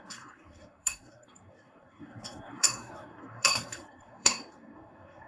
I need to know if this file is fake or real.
fake